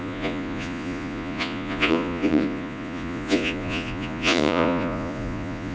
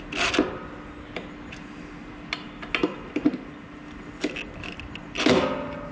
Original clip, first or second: second